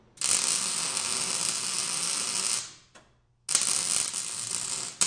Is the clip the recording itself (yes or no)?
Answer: yes